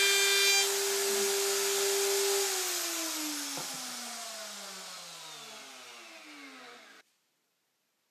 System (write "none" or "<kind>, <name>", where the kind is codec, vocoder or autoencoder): none